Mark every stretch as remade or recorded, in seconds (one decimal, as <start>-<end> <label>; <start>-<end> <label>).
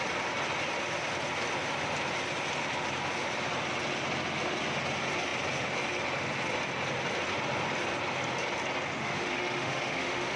0.0-9.0 recorded; 9.0-10.4 remade